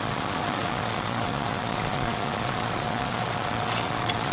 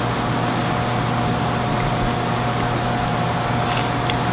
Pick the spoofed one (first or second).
first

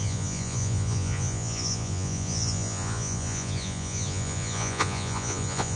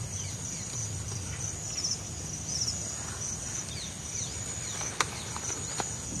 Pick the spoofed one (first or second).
first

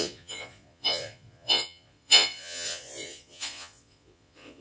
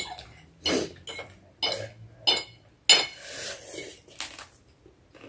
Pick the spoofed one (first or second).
first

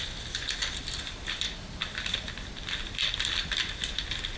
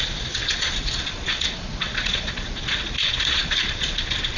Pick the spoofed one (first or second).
second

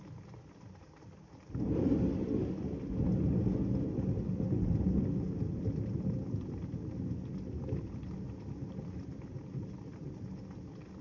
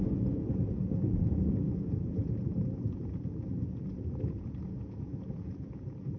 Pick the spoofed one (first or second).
second